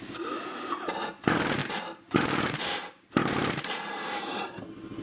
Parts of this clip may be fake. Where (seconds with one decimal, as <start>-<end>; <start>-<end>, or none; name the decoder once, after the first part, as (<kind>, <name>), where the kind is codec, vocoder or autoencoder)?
1.6-4.6 (vocoder, BigVGAN v2)